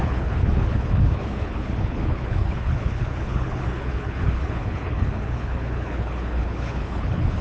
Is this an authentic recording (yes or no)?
no